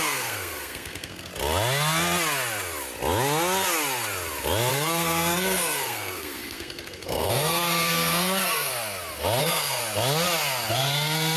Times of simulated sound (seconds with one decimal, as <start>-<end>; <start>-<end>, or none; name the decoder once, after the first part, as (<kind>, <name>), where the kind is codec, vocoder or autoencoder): 0.0-1.3 (codec, SNAC); 4.7-8.7; 9.4-9.8; 10.7-11.4